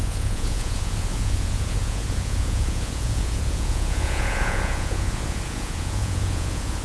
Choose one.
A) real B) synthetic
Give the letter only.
B